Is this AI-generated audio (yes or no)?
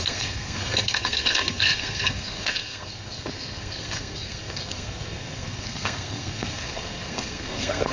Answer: yes